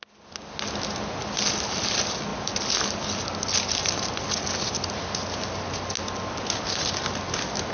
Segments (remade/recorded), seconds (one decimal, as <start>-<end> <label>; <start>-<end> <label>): 0.0-7.7 recorded